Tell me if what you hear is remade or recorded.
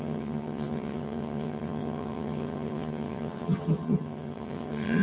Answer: remade